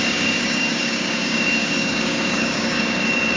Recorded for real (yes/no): no